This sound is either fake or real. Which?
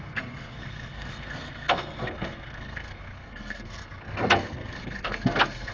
fake